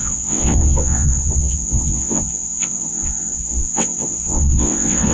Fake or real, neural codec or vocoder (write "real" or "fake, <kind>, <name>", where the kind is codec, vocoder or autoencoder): fake, vocoder, WaveNeXt